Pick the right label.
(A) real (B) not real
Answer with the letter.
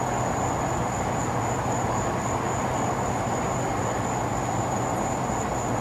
A